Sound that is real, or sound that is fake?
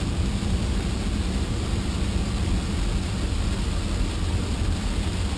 real